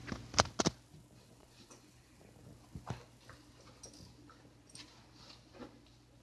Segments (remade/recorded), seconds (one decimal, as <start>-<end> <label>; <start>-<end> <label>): 0.0-1.3 recorded; 1.3-2.0 remade; 2.0-6.2 recorded